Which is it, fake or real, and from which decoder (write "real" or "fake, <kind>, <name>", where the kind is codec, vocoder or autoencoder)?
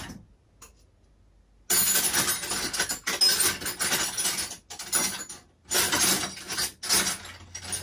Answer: real